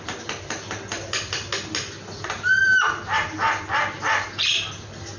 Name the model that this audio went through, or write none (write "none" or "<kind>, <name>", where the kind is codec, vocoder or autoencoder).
none